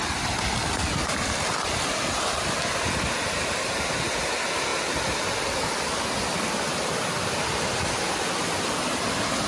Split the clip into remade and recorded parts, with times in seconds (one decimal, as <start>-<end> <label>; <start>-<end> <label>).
0.0-9.5 recorded